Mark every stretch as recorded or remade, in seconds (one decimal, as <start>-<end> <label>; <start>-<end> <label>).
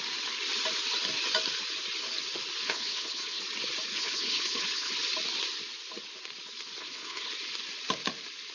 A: 0.0-2.6 recorded; 2.6-3.4 remade; 3.4-3.9 recorded; 3.9-4.9 remade; 4.9-6.8 recorded; 6.8-7.3 remade; 7.3-8.5 recorded